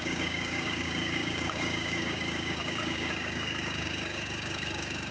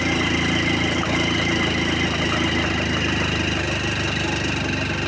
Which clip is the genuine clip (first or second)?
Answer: second